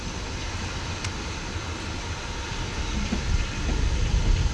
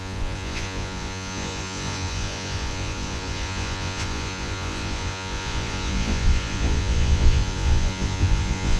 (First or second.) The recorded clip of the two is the first